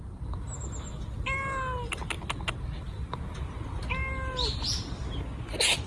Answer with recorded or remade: recorded